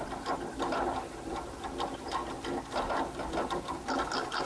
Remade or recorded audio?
recorded